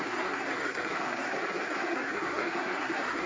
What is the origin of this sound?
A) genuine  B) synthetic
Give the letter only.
B